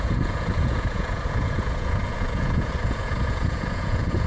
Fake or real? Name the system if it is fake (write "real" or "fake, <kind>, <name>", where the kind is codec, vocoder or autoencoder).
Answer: fake, vocoder, Vocos